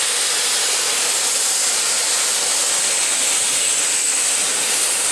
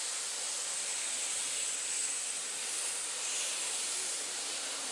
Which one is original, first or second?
first